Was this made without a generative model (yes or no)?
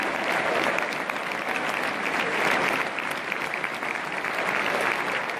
yes